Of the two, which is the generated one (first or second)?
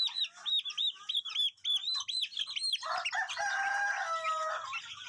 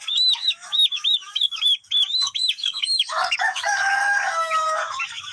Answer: second